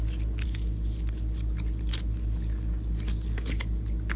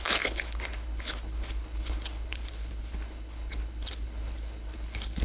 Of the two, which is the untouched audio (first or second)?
first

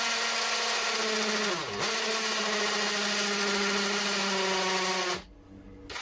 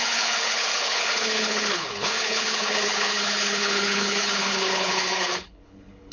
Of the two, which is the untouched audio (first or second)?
first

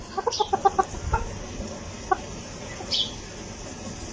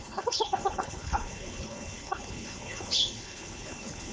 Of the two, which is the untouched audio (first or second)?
first